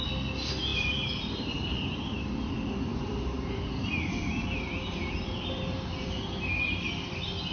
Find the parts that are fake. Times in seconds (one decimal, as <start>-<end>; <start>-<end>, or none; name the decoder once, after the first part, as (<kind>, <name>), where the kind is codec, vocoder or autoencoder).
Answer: 0.7-2.0 (vocoder, BigVGAN v2); 2.9-6.2